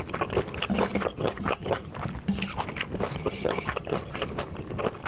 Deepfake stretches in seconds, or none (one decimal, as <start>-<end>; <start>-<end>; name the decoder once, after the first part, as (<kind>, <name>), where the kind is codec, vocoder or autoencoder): 1.1-1.9 (vocoder, HiFi-GAN); 3.2-4.2